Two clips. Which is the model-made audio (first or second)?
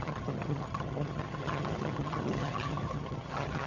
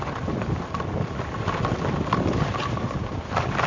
first